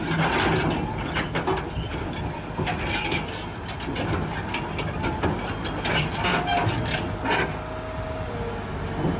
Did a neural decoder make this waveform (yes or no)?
no